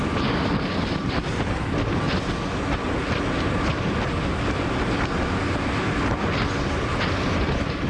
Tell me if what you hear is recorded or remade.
recorded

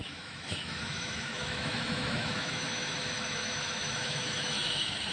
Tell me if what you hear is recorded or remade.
remade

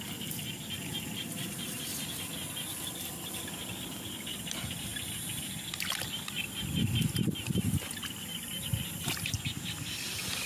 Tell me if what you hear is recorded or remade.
recorded